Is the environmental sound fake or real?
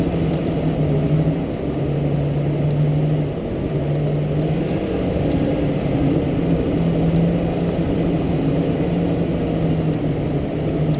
real